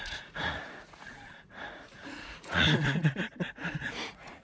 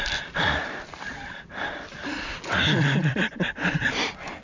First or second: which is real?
second